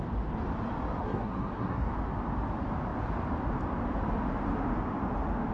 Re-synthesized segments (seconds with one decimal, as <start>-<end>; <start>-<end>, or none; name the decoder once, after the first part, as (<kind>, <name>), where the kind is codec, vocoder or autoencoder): 1.0-1.9 (codec, SNAC)